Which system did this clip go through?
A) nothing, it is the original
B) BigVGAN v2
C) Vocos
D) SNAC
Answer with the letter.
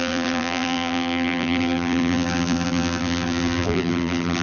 B